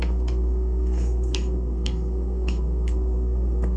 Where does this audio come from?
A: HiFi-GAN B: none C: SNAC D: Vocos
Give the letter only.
C